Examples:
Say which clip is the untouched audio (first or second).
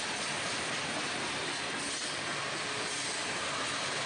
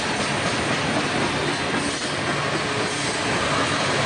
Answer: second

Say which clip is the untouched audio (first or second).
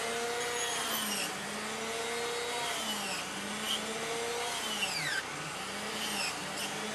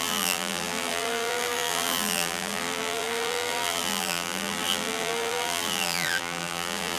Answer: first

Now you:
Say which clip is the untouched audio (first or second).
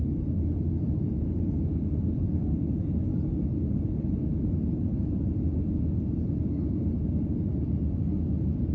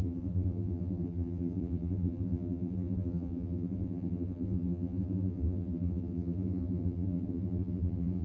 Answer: first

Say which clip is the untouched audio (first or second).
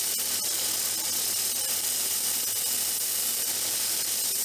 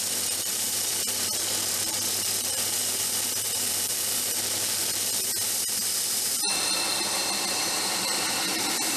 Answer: first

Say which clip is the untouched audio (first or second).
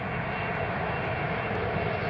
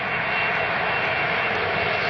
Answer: second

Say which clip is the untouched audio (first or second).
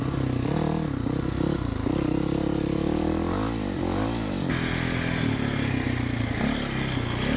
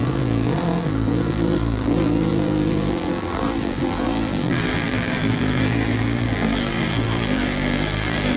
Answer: first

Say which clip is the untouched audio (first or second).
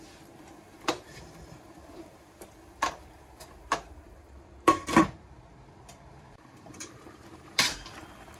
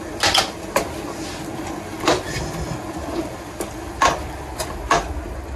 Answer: second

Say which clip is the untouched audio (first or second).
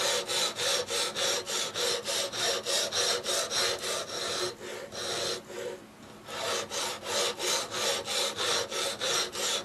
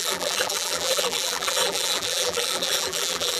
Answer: first